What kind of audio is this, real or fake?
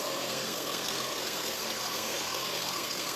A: fake